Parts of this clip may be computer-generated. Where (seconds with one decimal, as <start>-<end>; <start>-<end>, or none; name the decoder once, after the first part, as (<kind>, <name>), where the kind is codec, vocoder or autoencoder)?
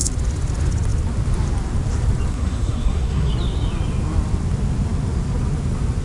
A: 2.3-3.3 (codec, SNAC)